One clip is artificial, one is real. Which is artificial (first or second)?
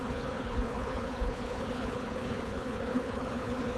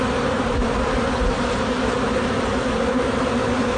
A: first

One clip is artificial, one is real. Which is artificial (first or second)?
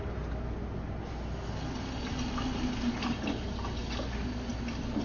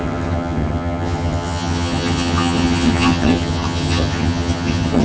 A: second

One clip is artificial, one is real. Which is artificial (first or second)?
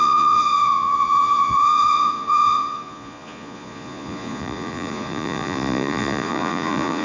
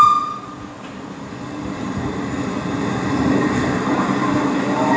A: first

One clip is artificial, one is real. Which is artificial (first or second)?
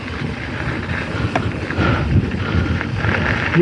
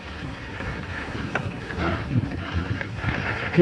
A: second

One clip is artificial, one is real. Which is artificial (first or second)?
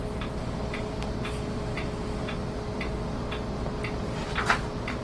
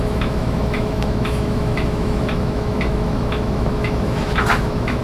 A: second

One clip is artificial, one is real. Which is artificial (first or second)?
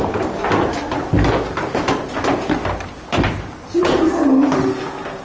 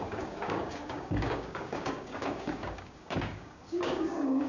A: second